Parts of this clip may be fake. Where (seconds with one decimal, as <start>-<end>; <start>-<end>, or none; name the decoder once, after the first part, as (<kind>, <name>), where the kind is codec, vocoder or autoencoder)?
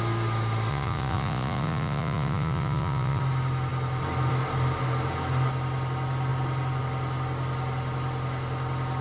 0.7-3.2 (vocoder, Vocos)